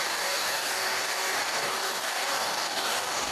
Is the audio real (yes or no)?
no